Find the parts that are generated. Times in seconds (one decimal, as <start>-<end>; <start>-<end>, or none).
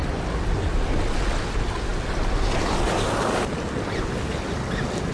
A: 0.0-0.9